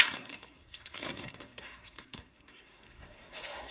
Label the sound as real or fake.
fake